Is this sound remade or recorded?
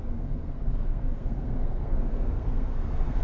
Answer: remade